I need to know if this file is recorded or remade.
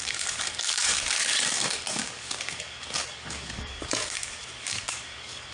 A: remade